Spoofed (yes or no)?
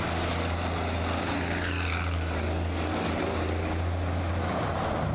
no